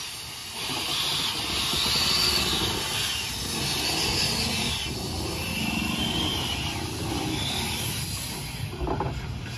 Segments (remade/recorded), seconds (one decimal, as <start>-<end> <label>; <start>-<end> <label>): 0.0-9.6 recorded